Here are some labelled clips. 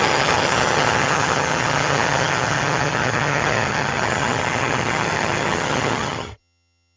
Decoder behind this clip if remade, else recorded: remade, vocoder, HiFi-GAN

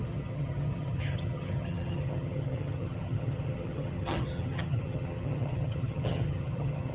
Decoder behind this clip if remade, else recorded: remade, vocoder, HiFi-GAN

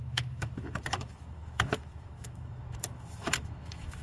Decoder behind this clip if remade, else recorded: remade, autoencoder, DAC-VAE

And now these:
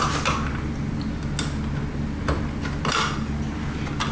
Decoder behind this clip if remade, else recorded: recorded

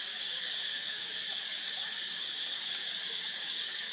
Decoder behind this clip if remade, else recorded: remade, codec, DAC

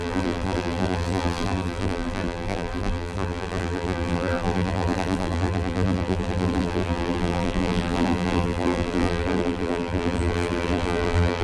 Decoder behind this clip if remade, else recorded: remade, vocoder, BigVGAN v2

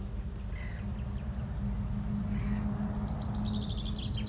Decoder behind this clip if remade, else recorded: recorded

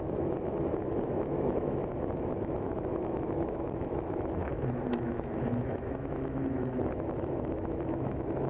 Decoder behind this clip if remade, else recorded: remade, autoencoder, DAC-VAE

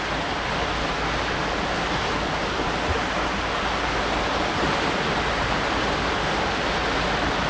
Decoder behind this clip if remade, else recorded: recorded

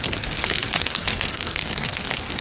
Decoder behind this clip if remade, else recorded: remade, codec, SNAC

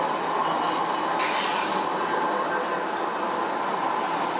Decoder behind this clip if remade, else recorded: recorded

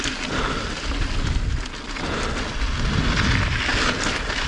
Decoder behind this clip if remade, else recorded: recorded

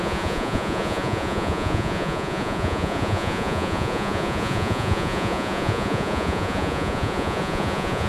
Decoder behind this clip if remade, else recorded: remade, vocoder, Vocos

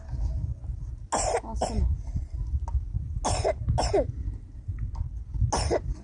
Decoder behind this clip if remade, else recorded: recorded